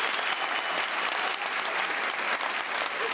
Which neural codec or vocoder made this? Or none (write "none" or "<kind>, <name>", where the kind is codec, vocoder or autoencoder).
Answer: none